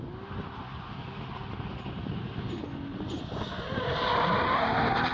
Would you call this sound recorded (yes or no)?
yes